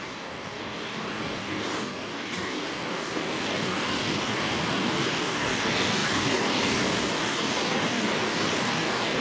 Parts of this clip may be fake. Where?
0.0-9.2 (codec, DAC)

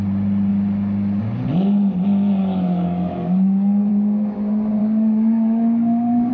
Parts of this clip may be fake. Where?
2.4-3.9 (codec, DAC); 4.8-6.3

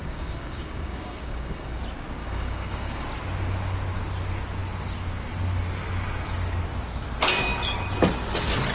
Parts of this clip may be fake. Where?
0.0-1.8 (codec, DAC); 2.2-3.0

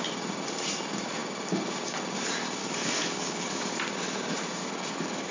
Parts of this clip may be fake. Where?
2.6-3.7 (codec, DAC); 4.6-5.3

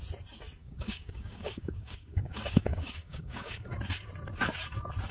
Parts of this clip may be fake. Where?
0.6-3.7 (codec, DAC)

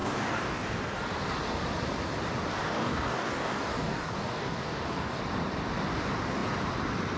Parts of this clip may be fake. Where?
0.0-0.8 (codec, DAC); 2.5-5.2